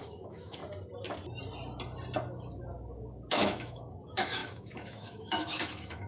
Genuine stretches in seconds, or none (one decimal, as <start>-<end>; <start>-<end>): 0.6-3.3